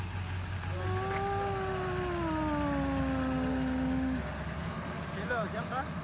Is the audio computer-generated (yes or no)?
no